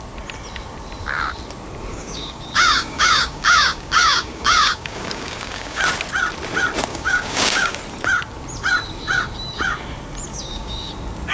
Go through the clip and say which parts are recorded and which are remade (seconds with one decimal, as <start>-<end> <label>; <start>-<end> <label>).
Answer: 0.0-1.9 recorded; 1.9-5.8 remade; 5.8-6.9 recorded; 6.9-7.8 remade; 7.8-10.3 recorded; 10.3-10.9 remade; 10.9-11.3 recorded